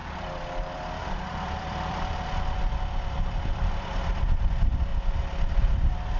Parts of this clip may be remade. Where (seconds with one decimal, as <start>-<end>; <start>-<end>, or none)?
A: 0.0-4.9; 5.6-6.2

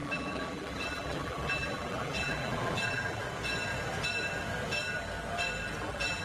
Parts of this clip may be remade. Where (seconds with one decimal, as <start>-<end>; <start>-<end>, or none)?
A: 0.0-3.2; 5.8-6.2

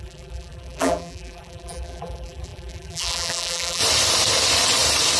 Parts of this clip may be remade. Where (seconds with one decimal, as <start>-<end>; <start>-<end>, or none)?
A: 0.0-3.8

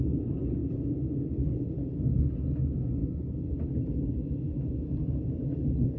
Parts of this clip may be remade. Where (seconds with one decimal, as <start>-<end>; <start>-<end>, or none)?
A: none

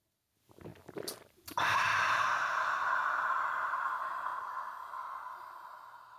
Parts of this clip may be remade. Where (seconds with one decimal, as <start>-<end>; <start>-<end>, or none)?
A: none

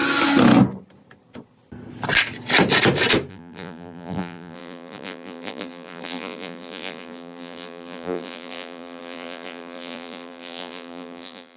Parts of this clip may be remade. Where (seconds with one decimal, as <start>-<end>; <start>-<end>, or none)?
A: 3.3-11.6

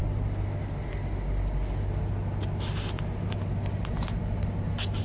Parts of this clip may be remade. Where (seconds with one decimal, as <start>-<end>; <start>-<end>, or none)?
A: none

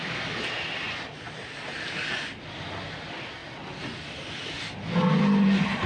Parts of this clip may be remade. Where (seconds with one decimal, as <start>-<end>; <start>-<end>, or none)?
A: none